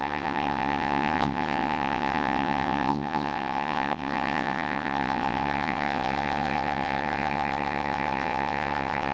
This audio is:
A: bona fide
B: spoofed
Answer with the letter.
B